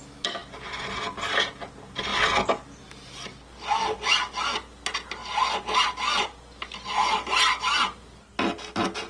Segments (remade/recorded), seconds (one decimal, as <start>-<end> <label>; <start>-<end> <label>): 0.0-9.1 recorded